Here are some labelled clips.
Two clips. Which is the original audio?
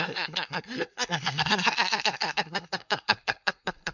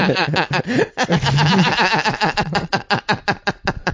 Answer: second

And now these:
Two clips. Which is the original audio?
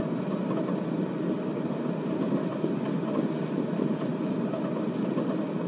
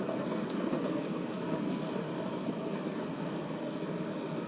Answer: first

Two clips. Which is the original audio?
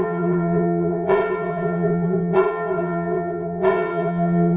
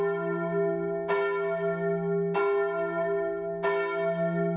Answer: second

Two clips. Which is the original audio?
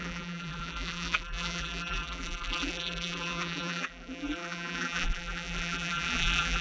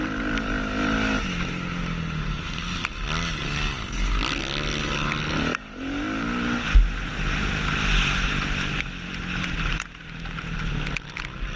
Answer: second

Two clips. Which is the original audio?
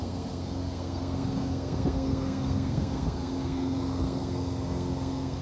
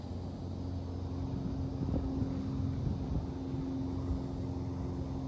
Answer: second